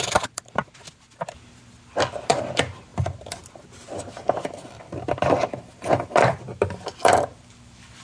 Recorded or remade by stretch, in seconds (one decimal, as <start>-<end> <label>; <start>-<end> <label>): 0.0-0.6 remade; 0.6-2.3 recorded; 2.3-8.0 remade

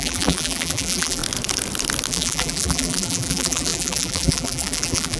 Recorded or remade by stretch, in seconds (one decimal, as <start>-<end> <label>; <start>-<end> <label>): 0.0-1.2 remade; 1.2-2.1 recorded; 2.1-5.2 remade

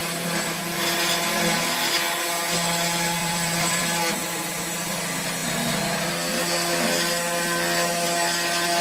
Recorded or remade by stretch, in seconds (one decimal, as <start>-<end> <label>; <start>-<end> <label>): 0.0-0.6 remade; 0.6-3.2 recorded; 3.2-3.8 remade; 3.8-8.8 recorded